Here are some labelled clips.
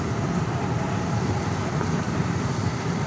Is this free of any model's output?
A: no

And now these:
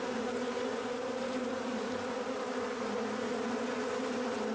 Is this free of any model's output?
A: yes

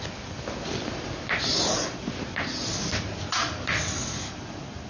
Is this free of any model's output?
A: yes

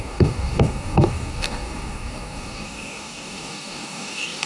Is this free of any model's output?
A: no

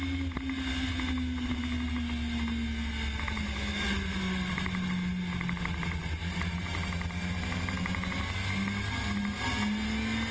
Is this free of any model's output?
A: yes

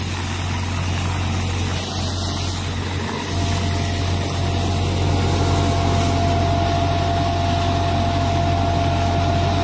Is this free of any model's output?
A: yes